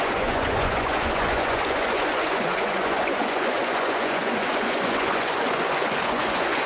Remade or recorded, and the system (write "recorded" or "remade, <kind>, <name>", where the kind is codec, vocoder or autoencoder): remade, vocoder, Vocos